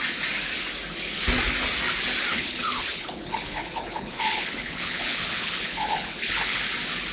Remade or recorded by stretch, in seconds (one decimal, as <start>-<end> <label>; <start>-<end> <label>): 0.0-2.3 recorded; 2.3-6.6 remade; 6.6-7.1 recorded